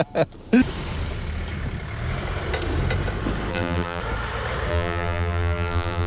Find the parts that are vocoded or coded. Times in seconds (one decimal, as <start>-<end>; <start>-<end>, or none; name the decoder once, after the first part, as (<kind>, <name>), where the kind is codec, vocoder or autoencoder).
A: 3.5-4.0 (vocoder, BigVGAN v2); 4.7-6.1